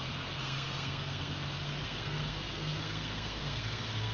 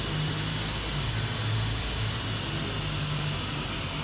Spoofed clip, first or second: first